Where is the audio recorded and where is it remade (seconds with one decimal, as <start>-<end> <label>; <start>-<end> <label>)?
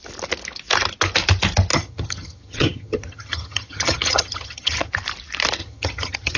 0.0-1.7 recorded; 1.7-4.9 remade; 4.9-5.6 recorded; 5.6-6.4 remade